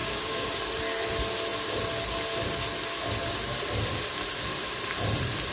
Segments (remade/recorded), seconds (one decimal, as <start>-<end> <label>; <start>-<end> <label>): 0.0-0.5 remade; 0.5-5.5 recorded